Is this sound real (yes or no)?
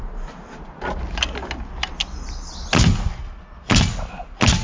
yes